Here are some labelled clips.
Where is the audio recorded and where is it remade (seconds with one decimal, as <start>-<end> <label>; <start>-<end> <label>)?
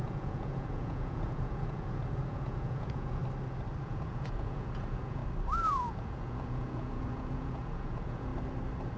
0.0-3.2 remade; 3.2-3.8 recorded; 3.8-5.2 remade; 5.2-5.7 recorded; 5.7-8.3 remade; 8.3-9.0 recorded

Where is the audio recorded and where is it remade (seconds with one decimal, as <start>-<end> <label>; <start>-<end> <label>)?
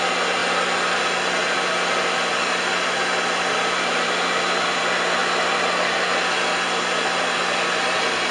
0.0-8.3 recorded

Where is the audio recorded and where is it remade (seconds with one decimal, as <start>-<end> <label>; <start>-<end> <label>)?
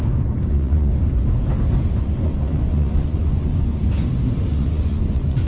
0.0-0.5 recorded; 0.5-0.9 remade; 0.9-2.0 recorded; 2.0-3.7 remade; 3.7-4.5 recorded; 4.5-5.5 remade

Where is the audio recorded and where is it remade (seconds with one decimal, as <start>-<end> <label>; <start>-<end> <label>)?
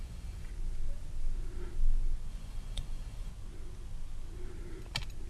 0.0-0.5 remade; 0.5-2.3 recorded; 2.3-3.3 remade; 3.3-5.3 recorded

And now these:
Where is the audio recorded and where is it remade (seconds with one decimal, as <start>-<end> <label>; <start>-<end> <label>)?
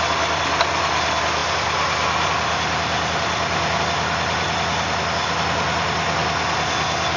0.0-7.2 recorded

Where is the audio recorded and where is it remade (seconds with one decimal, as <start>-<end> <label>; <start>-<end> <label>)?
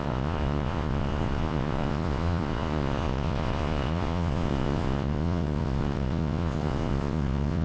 0.0-7.6 remade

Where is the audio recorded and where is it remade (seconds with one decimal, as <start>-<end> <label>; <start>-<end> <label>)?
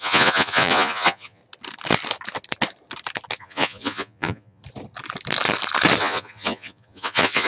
0.0-1.4 remade; 1.4-3.4 recorded; 3.4-4.6 remade; 4.6-6.0 recorded; 6.0-7.5 remade